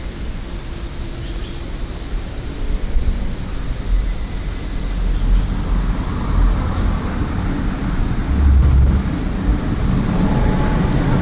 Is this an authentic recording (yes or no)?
yes